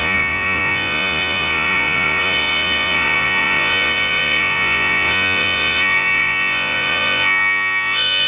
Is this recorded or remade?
remade